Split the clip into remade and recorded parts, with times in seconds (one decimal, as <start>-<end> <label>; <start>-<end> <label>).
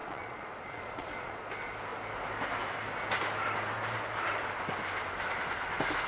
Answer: 0.0-1.4 remade; 1.4-6.1 recorded